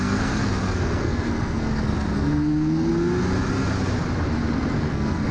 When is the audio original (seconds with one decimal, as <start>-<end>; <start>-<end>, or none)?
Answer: 2.9-4.8